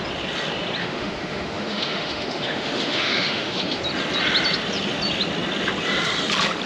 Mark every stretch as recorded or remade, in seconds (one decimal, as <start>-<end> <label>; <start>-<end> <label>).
0.0-0.8 recorded; 0.8-3.8 remade; 3.8-6.7 recorded